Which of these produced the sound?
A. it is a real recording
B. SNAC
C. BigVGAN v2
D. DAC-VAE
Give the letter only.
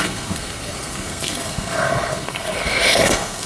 B